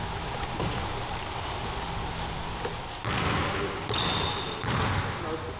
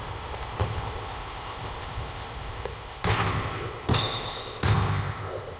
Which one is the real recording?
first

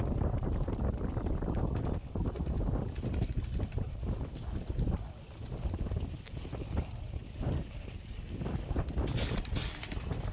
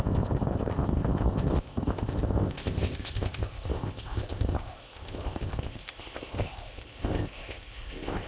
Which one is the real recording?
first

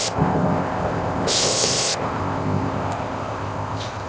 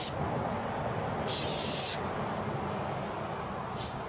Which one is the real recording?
second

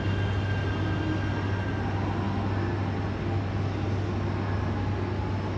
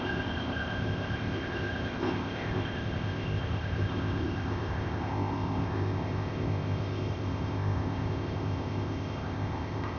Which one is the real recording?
first